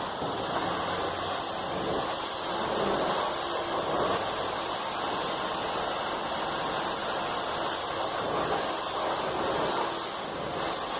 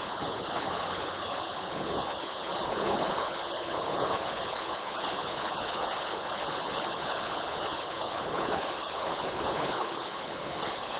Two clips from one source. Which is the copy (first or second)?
second